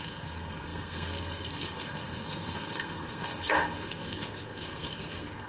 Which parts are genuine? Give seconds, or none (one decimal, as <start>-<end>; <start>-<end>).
none